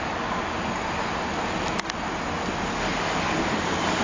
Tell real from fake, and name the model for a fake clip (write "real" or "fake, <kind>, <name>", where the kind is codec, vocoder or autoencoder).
real